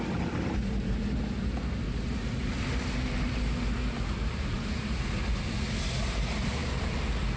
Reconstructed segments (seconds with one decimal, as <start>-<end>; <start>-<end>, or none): 6.6-7.4